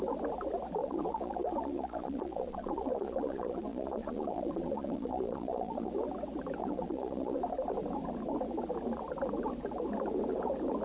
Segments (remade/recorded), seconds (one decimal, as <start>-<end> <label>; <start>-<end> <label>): 0.0-0.8 recorded; 0.8-5.9 remade; 5.9-6.6 recorded; 6.6-7.4 remade; 7.4-10.8 recorded